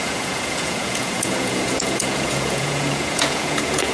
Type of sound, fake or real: fake